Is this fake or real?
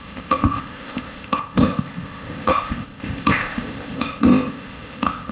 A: fake